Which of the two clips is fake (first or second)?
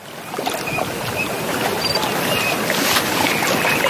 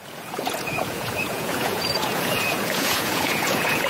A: second